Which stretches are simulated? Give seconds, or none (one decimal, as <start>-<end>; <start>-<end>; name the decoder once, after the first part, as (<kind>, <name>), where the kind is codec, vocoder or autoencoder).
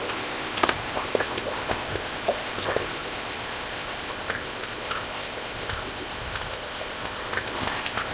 0.0-8.1 (codec, ZipCodec)